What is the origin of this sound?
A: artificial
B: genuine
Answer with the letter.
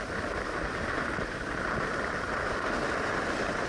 B